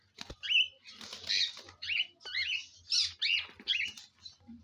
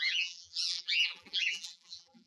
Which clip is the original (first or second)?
first